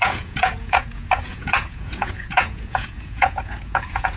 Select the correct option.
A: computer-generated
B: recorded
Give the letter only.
A